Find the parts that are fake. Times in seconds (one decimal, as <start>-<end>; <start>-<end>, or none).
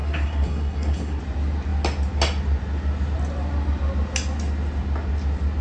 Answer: 0.0-1.2